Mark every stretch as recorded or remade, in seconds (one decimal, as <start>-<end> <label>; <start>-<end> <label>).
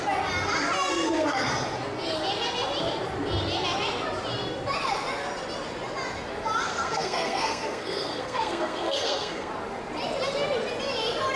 0.0-0.9 recorded; 0.9-1.5 remade; 1.5-6.7 recorded; 6.7-9.5 remade; 9.5-11.4 recorded